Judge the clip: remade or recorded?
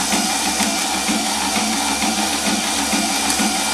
recorded